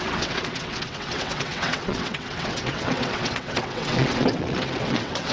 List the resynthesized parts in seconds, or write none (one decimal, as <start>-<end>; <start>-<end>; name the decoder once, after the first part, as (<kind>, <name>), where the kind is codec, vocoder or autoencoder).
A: 0.0-5.3 (vocoder, WaveNeXt)